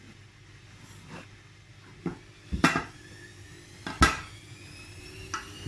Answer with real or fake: real